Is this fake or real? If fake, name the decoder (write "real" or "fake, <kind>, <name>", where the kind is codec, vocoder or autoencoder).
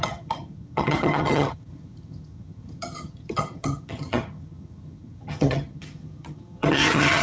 fake, vocoder, HiFi-GAN